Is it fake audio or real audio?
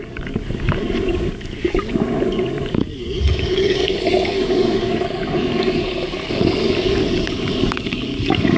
fake